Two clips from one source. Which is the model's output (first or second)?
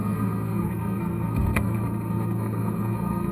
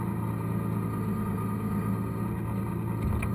first